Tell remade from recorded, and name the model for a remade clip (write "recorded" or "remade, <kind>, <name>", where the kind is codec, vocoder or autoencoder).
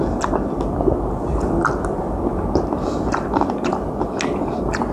recorded